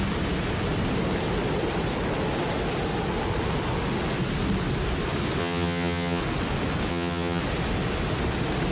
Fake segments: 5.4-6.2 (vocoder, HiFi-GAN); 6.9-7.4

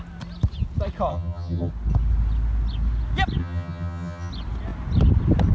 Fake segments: 1.1-1.7 (vocoder, HiFi-GAN); 3.4-4.3

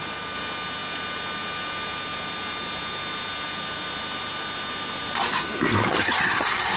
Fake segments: 5.9-6.8 (vocoder, HiFi-GAN)

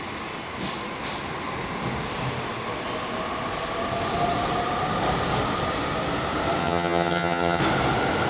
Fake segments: 6.6-7.6 (vocoder, HiFi-GAN)

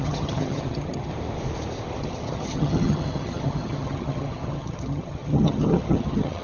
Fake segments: 0.0-1.1 (vocoder, HiFi-GAN); 2.0-6.4

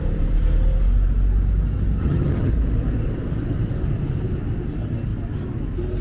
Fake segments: 2.0-2.5 (vocoder, HiFi-GAN)

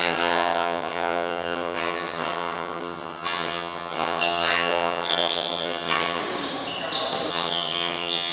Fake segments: 0.0-6.2 (vocoder, HiFi-GAN); 7.3-8.3

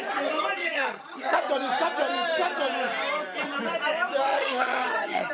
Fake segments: 0.6-1.5 (vocoder, HiFi-GAN); 4.3-5.3